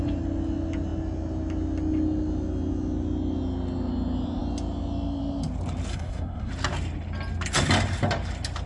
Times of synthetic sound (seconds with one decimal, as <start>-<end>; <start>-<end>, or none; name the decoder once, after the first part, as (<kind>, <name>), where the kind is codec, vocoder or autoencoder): 5.9-6.5 (codec, SNAC)